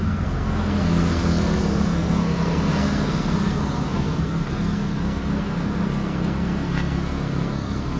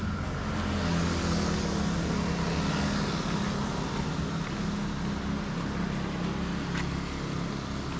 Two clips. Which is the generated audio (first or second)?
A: first